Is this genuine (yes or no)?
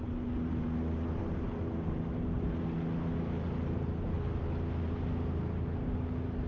yes